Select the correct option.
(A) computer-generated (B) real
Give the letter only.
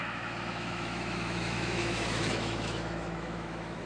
A